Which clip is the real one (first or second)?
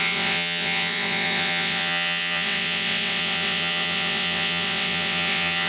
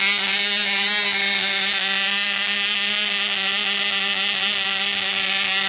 second